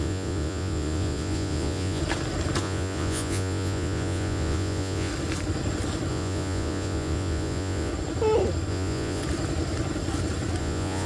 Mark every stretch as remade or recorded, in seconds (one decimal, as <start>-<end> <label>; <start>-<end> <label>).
0.0-2.0 remade; 2.0-2.6 recorded; 2.6-5.1 remade; 5.1-6.1 recorded; 6.1-7.9 remade; 7.9-8.7 recorded; 8.7-9.2 remade; 9.2-10.6 recorded; 10.6-11.1 remade

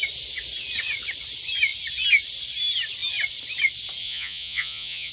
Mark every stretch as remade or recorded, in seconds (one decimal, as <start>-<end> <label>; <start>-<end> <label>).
0.0-4.0 recorded; 4.0-5.1 remade

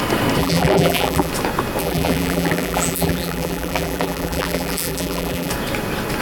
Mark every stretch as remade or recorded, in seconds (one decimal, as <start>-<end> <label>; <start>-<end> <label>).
0.0-0.4 recorded; 0.4-1.3 remade; 1.3-1.8 recorded; 1.8-5.5 remade; 5.5-6.2 recorded